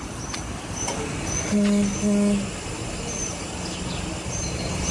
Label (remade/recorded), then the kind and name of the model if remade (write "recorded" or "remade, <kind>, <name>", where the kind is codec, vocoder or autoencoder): recorded